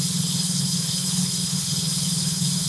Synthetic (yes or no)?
yes